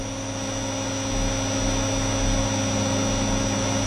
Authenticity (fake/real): real